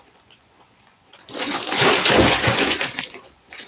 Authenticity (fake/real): fake